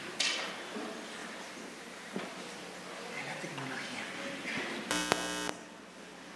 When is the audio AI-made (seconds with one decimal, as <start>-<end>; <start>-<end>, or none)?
1.2-2.2